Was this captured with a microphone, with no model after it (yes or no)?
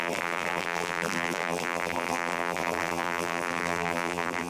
no